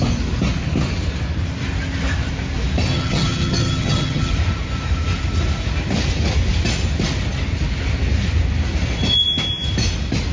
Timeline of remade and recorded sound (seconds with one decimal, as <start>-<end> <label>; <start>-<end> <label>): 0.0-2.9 recorded; 2.9-4.3 remade; 4.3-10.3 recorded